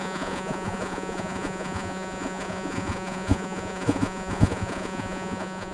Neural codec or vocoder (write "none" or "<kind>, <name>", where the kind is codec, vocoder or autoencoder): vocoder, Vocos